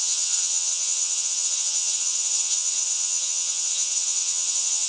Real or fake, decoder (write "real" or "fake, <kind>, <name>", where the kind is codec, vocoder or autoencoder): fake, vocoder, HiFi-GAN